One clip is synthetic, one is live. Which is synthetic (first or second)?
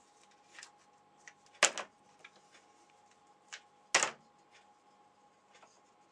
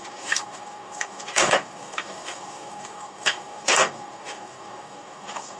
second